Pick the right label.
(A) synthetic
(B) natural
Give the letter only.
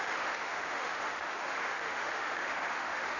A